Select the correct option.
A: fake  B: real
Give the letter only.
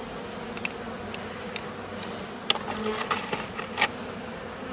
B